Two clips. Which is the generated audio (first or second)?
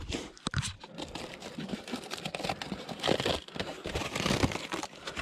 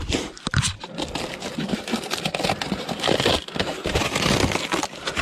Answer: first